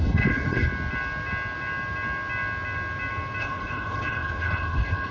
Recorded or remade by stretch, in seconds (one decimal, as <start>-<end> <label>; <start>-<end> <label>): 0.0-0.7 remade; 0.7-3.4 recorded; 3.4-5.1 remade